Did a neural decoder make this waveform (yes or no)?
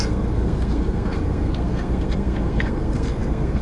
yes